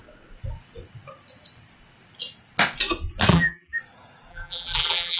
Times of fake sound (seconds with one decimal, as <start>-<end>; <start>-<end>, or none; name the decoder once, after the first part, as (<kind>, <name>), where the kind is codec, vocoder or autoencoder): 3.3-3.8 (vocoder, BigVGAN v2); 4.3-5.2